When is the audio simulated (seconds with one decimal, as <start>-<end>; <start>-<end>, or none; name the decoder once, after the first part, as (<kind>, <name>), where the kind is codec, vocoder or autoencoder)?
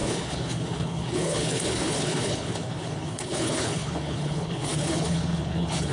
0.0-5.9 (codec, HILCodec)